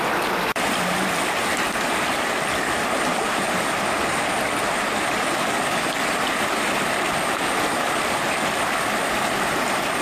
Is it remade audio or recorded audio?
recorded